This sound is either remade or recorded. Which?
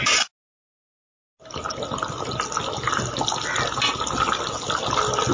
recorded